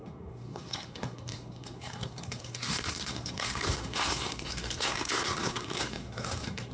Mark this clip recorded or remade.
remade